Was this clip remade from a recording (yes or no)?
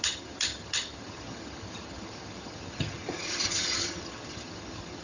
yes